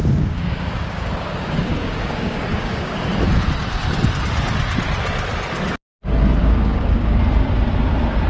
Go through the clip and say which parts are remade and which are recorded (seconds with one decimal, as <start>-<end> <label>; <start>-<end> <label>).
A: 0.0-3.0 remade; 3.0-6.4 recorded; 6.4-7.2 remade; 7.2-8.3 recorded